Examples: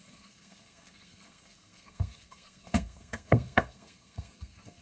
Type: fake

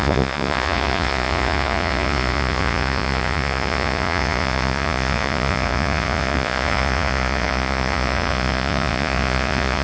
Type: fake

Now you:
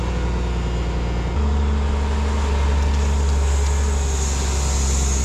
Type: real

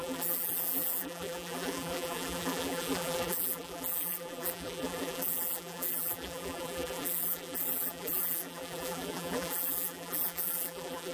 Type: fake